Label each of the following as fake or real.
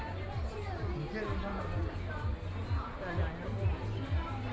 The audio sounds real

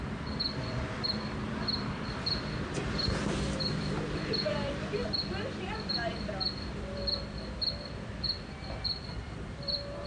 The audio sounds fake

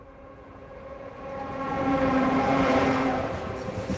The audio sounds fake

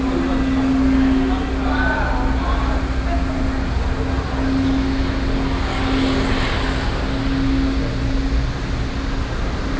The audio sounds real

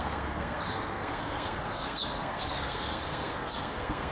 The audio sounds fake